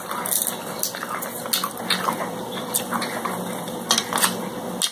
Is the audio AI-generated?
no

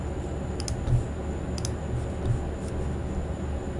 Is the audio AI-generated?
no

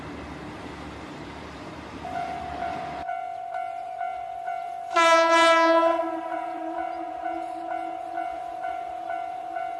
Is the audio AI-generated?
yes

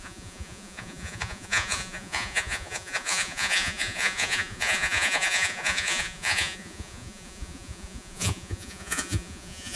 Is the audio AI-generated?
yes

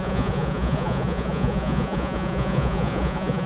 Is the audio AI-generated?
yes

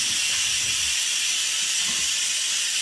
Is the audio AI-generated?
no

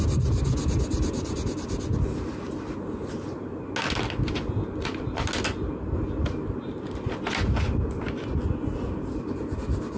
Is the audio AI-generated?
no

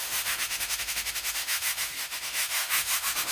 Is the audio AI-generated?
yes